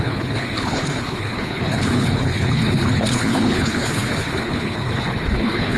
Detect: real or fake fake